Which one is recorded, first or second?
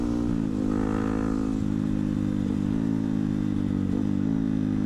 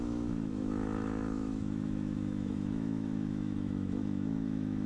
first